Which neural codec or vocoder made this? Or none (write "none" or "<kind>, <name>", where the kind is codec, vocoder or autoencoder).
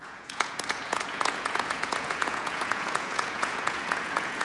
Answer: vocoder, Vocos